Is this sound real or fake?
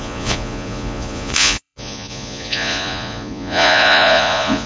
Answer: fake